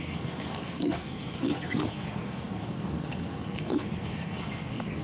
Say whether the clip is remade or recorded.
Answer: remade